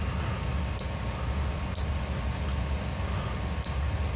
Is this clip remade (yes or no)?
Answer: no